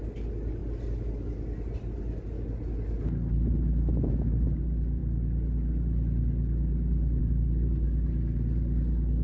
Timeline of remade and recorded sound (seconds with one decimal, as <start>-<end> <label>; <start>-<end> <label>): 0.0-9.2 recorded